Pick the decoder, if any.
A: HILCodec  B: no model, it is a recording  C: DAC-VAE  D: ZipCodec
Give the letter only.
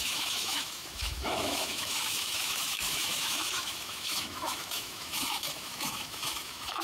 C